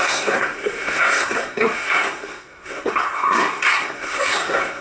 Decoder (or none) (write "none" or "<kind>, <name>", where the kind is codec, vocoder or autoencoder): codec, SNAC